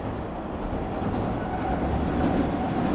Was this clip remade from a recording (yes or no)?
no